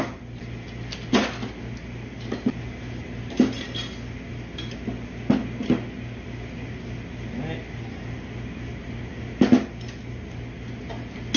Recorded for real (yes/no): yes